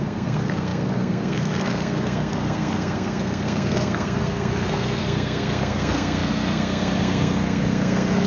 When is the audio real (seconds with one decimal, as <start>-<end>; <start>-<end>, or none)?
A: none